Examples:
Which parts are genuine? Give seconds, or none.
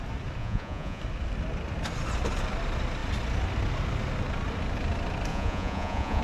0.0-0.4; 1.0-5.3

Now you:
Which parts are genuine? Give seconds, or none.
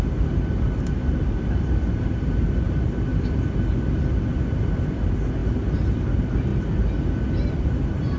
3.1-4.8; 6.5-7.5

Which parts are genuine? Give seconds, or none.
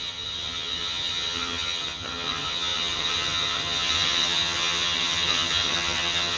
none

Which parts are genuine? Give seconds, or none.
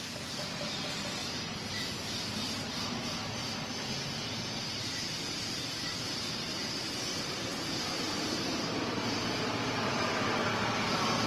1.2-2.3; 3.4-4.6; 10.4-11.3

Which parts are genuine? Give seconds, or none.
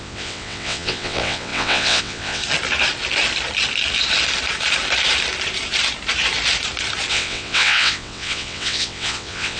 2.4-7.1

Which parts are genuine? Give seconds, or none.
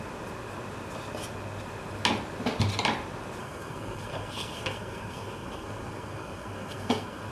0.0-3.4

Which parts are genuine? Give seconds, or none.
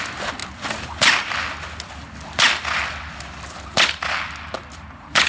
0.0-5.3